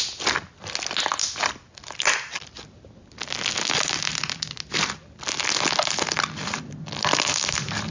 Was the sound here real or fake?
real